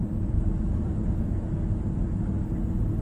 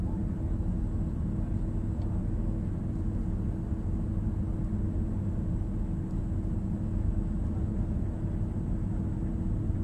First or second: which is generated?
first